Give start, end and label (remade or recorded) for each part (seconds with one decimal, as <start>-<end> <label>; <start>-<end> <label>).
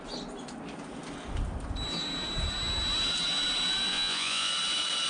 0.0-3.9 recorded; 3.9-4.5 remade; 4.5-5.1 recorded